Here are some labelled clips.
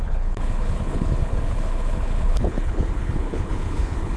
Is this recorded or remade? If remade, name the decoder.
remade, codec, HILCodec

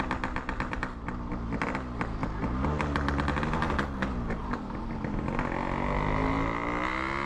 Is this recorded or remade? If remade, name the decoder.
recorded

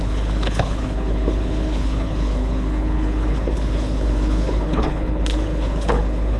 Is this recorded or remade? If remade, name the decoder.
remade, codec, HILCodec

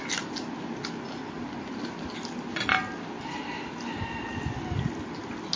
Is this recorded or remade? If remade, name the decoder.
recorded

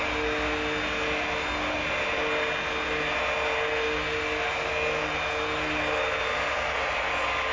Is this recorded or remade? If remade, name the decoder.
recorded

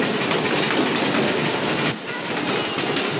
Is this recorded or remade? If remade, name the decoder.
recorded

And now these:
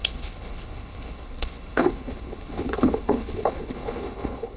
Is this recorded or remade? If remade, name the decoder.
remade, codec, HILCodec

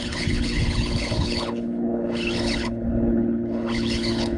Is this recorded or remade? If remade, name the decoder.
remade, codec, HILCodec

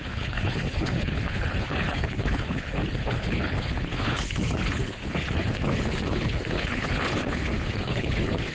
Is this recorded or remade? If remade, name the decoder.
remade, codec, HILCodec